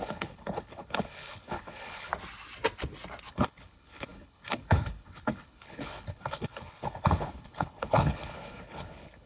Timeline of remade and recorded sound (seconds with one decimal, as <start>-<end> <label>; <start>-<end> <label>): 0.0-2.1 remade; 2.1-3.3 recorded; 3.3-9.3 remade